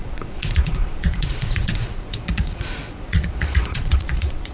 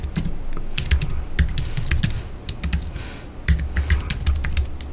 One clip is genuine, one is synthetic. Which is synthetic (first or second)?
first